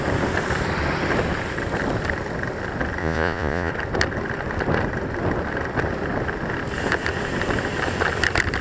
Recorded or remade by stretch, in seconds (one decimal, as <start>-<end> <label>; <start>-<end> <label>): 0.0-3.0 recorded; 3.0-3.7 remade; 3.7-8.6 recorded